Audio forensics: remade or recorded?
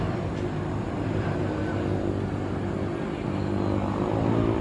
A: recorded